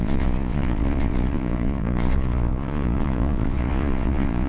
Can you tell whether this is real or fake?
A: fake